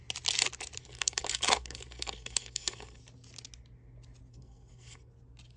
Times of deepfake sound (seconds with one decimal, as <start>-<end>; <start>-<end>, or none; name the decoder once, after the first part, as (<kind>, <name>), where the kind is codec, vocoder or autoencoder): 0.8-3.0 (codec, SNAC); 4.3-5.1